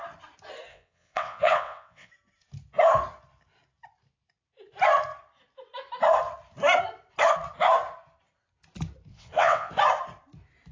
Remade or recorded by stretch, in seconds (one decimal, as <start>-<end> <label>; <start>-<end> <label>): 0.0-0.7 recorded; 0.7-2.1 remade; 2.1-9.1 recorded; 9.1-9.7 remade; 9.7-10.7 recorded